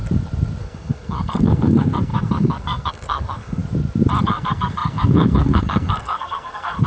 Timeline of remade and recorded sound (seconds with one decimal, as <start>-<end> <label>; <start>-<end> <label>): 0.0-0.6 recorded; 0.6-3.6 remade; 3.6-4.2 recorded; 4.2-6.9 remade